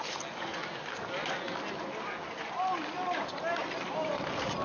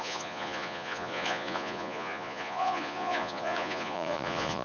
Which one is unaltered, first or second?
first